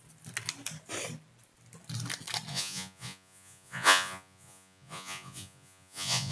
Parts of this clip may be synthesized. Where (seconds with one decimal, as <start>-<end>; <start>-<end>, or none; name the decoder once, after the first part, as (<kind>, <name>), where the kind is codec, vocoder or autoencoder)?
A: 2.5-6.3 (vocoder, Vocos)